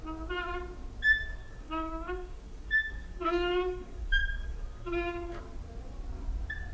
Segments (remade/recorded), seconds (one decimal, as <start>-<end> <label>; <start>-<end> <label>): 0.0-1.4 recorded; 1.4-5.4 remade; 5.4-6.7 recorded